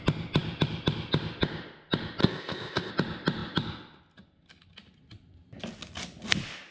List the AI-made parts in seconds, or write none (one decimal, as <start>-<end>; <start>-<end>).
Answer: 2.2-2.9